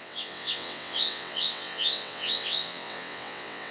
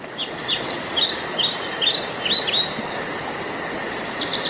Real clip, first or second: second